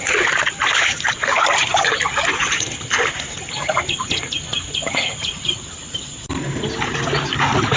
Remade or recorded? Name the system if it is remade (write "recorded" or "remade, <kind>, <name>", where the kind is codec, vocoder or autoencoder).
recorded